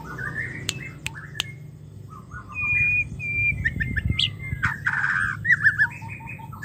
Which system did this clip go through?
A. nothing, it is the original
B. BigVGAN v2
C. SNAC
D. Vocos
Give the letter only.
A